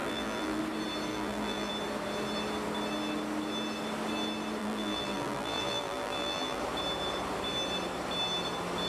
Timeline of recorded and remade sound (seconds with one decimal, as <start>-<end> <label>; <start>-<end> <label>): 0.0-0.6 remade; 0.6-1.1 recorded; 1.1-1.7 remade; 1.7-4.6 recorded; 4.6-6.6 remade; 6.6-8.9 recorded